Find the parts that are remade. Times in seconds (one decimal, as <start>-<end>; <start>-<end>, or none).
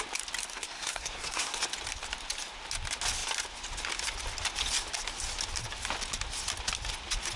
0.5-1.6